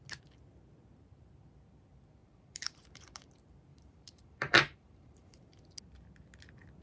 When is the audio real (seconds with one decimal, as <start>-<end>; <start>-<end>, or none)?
0.0-2.2; 3.3-3.7; 5.4-6.8

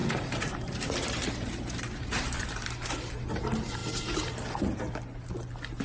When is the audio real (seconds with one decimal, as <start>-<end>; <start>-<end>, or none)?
2.7-5.8

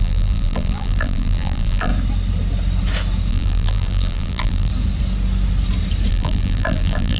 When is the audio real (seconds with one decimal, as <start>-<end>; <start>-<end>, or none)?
1.9-3.3; 4.7-6.1

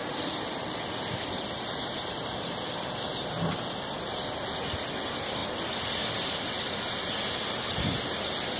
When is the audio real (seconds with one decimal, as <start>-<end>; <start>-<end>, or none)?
0.0-8.6

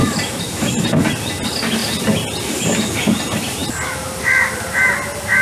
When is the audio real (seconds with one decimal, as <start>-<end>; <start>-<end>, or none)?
1.0-5.4

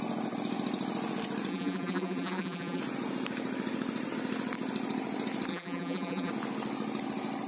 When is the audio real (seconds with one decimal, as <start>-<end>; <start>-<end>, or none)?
0.0-1.5; 2.8-5.5; 6.3-7.5